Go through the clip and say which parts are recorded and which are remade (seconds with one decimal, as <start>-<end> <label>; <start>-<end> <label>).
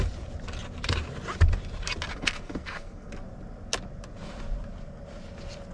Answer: 0.0-2.1 recorded; 2.1-3.1 remade; 3.1-5.7 recorded